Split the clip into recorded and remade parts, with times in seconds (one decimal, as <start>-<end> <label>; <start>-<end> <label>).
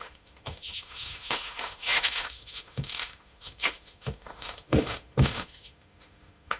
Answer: 0.0-6.6 remade